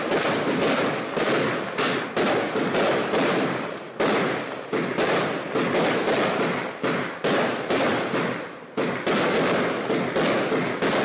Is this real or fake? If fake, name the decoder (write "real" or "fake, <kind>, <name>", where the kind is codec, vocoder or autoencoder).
real